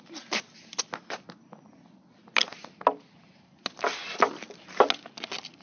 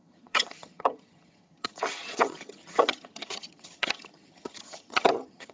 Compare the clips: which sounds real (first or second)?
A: first